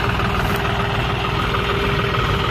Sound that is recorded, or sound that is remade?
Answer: recorded